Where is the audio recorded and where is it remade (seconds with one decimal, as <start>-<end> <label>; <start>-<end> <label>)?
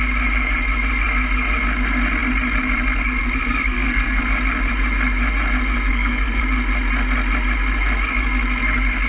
0.0-3.6 recorded; 3.6-4.2 remade; 4.2-5.9 recorded; 5.9-6.4 remade; 6.4-9.1 recorded